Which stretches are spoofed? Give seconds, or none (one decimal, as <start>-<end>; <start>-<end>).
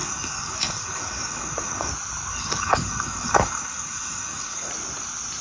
0.0-1.9; 2.3-4.7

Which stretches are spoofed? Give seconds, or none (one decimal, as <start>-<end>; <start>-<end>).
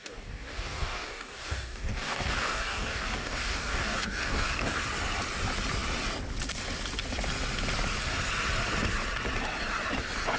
0.0-4.8